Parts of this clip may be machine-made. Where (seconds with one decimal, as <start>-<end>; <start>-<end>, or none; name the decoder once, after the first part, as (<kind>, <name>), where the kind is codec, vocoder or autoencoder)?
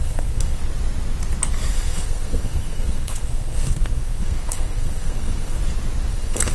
0.0-0.6 (codec, SNAC); 1.7-5.6; 6.1-6.5